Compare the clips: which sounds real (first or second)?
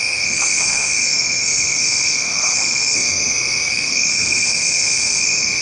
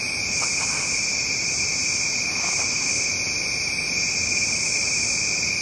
second